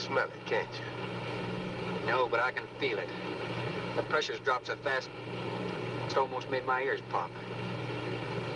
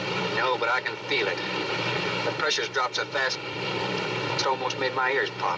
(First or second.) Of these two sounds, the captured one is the first